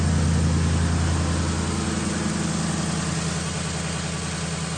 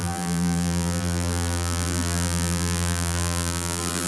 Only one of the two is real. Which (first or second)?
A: first